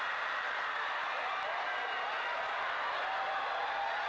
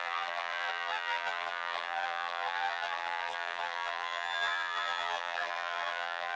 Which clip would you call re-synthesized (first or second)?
second